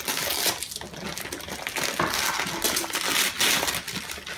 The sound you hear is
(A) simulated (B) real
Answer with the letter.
B